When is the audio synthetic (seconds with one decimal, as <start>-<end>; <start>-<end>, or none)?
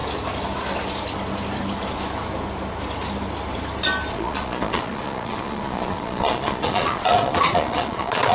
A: 4.1-8.3